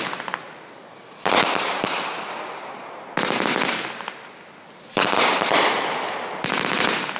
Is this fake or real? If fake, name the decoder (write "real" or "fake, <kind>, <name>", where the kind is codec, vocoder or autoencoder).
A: fake, vocoder, BigVGAN v2